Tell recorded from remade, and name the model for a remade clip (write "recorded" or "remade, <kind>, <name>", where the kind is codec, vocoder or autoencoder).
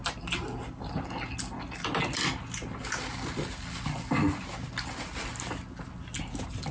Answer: recorded